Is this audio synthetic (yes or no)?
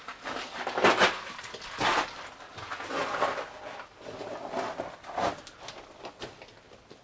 no